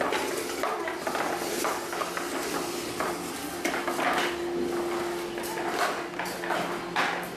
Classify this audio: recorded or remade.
recorded